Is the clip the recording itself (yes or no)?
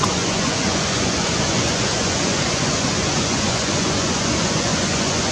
no